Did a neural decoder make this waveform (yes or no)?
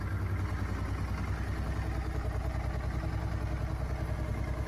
no